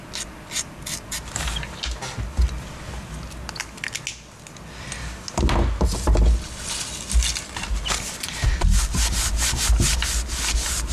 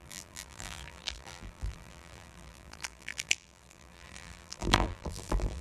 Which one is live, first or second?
first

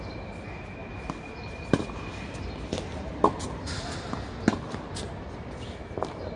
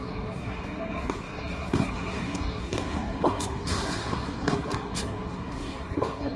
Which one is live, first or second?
first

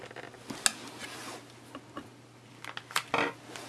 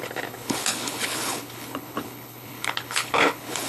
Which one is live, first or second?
first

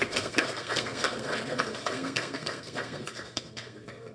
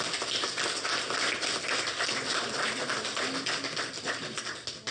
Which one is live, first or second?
second